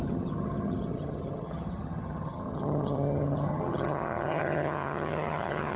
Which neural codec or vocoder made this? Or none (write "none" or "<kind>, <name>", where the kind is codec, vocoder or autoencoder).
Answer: vocoder, HiFi-GAN